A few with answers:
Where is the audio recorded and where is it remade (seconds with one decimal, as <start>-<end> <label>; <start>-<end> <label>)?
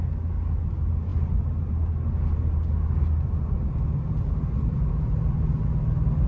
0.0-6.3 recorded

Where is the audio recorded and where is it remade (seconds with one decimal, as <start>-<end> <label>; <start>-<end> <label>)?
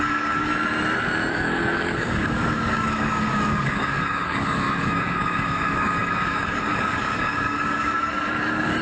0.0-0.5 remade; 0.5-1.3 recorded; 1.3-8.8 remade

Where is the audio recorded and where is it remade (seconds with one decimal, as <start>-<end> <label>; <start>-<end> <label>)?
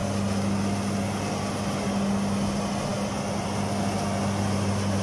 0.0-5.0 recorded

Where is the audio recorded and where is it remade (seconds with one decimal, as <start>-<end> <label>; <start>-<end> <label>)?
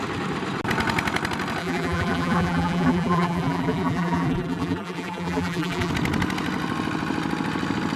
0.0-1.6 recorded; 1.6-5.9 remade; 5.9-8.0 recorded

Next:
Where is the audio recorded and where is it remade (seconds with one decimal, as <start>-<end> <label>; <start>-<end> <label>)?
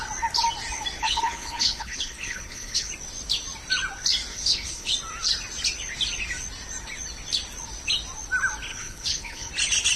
0.0-1.0 recorded; 1.0-2.9 remade; 2.9-4.3 recorded; 4.3-4.9 remade; 4.9-8.7 recorded; 8.7-9.5 remade; 9.5-10.0 recorded